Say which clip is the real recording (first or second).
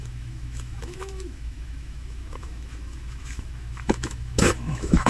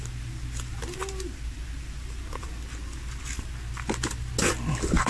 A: second